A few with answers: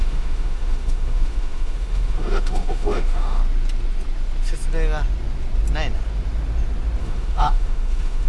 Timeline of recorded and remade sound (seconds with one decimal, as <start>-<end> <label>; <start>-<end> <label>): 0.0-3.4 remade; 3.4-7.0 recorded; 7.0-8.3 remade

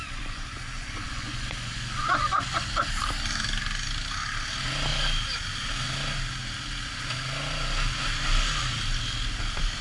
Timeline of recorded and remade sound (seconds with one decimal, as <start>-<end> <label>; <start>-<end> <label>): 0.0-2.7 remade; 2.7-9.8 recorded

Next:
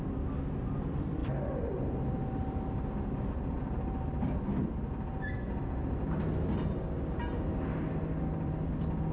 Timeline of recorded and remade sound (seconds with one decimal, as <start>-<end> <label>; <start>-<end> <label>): 0.0-9.1 recorded

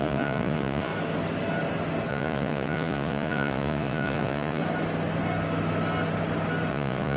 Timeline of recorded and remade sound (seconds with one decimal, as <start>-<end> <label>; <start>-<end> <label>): 0.0-0.9 remade; 0.9-2.1 recorded; 2.1-4.6 remade; 4.6-6.7 recorded; 6.7-7.2 remade